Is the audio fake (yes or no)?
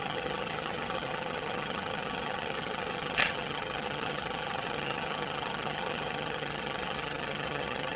yes